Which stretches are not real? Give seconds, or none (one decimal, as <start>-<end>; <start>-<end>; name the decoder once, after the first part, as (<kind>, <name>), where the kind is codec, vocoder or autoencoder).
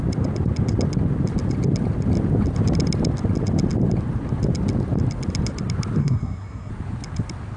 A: 6.0-6.7 (codec, SNAC)